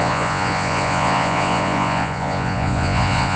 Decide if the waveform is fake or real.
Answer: fake